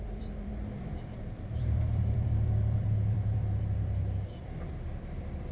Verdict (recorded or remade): remade